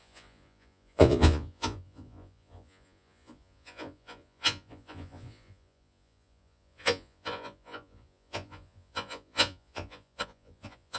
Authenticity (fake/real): fake